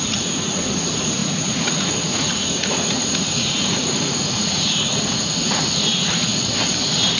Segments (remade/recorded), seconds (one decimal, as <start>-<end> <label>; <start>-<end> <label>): 0.0-6.3 remade; 6.3-6.8 recorded; 6.8-7.2 remade